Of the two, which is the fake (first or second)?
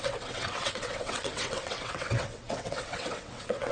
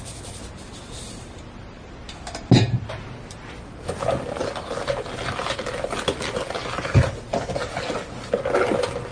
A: first